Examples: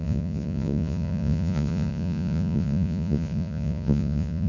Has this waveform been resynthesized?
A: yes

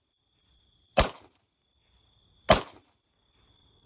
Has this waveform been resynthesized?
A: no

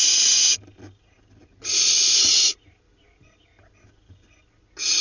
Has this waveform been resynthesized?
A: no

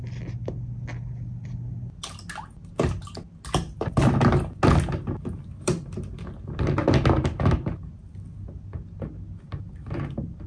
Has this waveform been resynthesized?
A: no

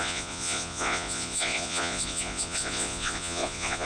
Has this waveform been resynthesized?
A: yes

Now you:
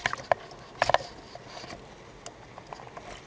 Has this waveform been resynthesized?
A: no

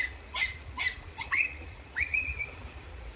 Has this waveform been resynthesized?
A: yes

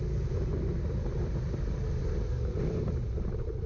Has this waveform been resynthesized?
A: no